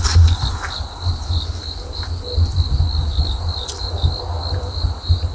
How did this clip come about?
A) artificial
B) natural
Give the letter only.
B